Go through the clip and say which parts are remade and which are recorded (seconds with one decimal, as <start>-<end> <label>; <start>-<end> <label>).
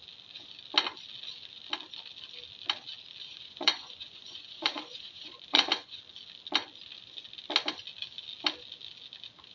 0.0-3.3 recorded; 3.3-6.0 remade; 6.0-9.5 recorded